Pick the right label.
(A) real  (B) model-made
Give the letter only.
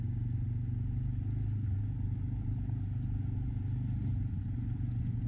A